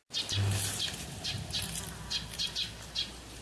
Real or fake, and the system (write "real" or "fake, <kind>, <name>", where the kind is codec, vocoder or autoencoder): real